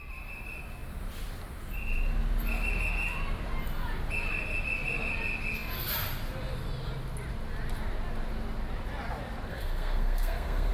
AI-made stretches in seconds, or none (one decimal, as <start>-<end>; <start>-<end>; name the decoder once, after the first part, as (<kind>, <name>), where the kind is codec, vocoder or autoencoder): 9.5-10.7 (codec, SNAC)